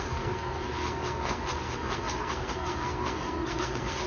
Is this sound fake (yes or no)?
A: yes